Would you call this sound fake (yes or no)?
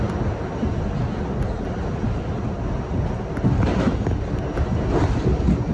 no